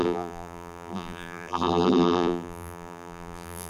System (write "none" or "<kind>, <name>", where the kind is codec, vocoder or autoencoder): vocoder, BigVGAN v2